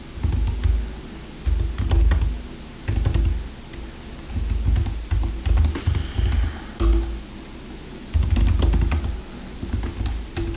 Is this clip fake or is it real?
real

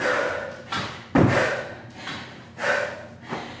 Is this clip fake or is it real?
real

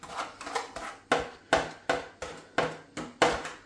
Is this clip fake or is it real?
real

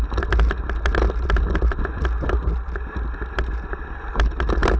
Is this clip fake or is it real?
real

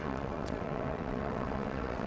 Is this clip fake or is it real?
fake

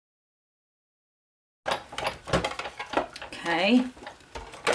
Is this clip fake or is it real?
real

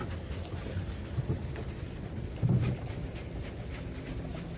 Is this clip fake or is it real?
real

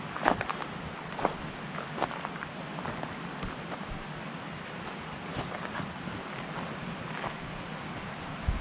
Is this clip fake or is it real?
real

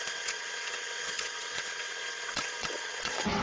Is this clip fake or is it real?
fake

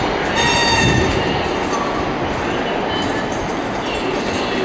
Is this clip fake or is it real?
real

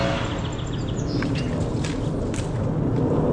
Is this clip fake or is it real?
real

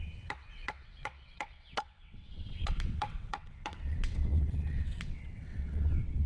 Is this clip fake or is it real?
fake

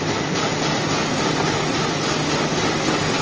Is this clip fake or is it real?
real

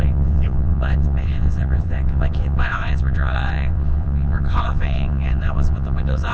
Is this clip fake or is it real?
fake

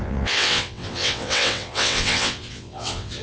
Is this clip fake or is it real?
fake